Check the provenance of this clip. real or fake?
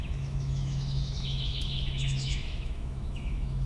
fake